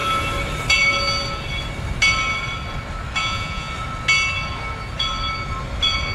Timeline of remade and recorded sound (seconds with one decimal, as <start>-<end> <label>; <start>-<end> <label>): 0.0-3.2 recorded; 3.2-3.7 remade; 3.7-6.1 recorded